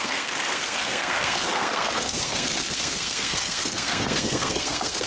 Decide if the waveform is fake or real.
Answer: fake